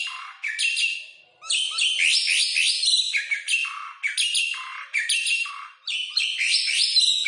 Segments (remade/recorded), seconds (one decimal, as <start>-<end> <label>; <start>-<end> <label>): 0.0-4.7 recorded; 4.7-5.5 remade; 5.5-7.3 recorded